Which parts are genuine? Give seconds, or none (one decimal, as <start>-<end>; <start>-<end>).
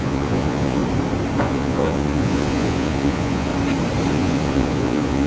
0.8-1.4; 3.5-4.1